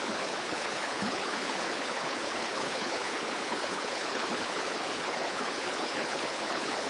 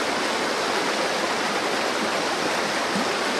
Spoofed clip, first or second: first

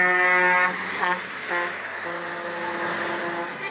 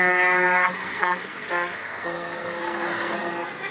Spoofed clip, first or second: second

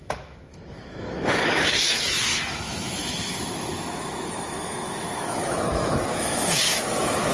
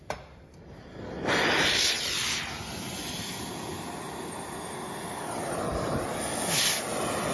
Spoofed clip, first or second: first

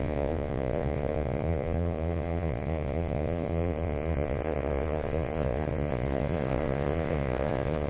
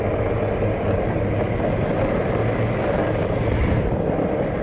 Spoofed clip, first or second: first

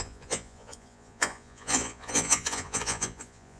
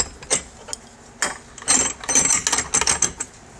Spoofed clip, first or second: first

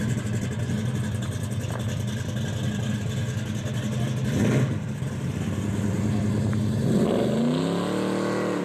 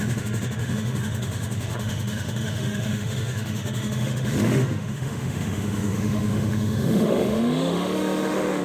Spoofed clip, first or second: second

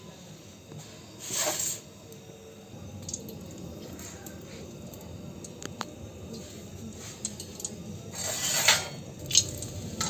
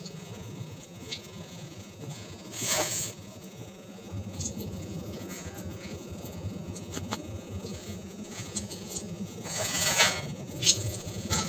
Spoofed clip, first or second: second